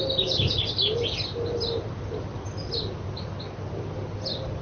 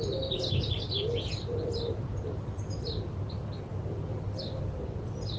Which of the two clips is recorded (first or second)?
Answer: first